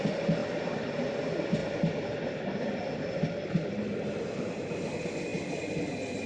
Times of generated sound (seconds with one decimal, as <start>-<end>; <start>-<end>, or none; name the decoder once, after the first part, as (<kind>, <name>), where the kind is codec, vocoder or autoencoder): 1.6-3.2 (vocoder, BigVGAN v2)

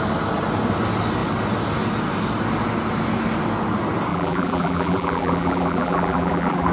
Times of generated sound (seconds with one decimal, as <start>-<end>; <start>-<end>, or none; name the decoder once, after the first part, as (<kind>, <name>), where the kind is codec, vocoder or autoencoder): 4.1-6.7 (vocoder, BigVGAN v2)

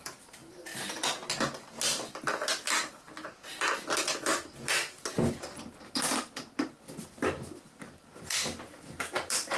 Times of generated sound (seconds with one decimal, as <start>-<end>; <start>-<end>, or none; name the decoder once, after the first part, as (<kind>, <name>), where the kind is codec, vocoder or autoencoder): none

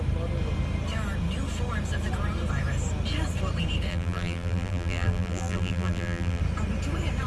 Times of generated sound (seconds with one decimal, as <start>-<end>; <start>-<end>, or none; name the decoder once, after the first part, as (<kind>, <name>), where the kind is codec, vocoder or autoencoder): 3.9-6.4 (vocoder, BigVGAN v2)